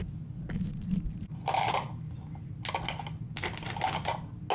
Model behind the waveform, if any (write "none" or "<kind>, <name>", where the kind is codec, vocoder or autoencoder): none